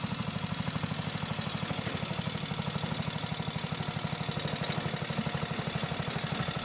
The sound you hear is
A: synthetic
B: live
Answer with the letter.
B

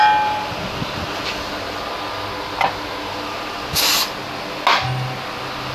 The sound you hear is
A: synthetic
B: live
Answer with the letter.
B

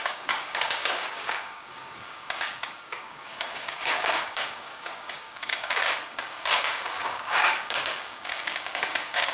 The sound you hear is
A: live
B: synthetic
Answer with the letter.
B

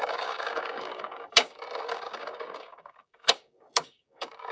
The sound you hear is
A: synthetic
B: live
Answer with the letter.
A